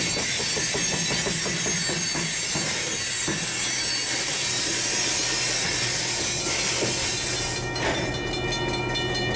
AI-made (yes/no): no